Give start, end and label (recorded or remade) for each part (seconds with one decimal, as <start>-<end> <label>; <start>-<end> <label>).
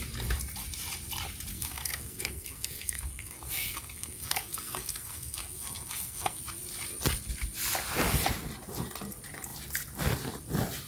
0.0-1.5 recorded; 1.5-6.4 remade; 6.4-10.9 recorded